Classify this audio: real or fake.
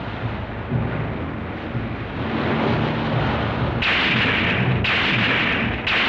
real